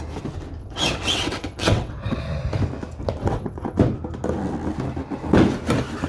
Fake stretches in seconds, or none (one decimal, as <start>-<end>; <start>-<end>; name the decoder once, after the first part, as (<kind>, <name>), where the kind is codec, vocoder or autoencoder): 0.6-2.2 (vocoder, WaveNeXt); 3.2-3.8